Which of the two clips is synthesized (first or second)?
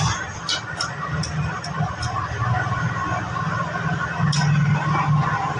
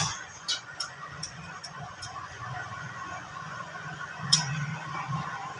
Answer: second